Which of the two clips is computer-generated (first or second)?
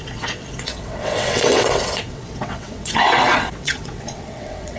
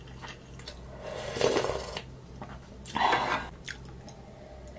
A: first